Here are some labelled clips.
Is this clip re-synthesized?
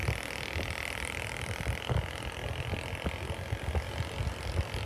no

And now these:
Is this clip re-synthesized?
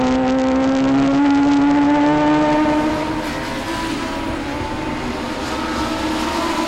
no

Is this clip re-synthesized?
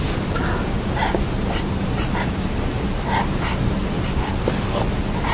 no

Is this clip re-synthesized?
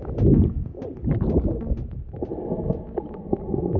no